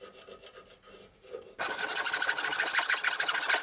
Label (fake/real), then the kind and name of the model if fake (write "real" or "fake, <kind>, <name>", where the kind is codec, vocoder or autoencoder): real